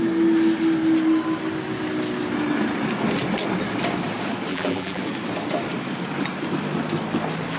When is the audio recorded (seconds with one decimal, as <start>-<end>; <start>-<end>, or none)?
0.0-4.5; 5.0-7.6